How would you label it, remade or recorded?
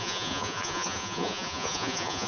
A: remade